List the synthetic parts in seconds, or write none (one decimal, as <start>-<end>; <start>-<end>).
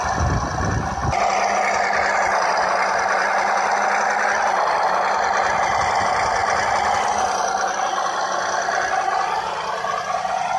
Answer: none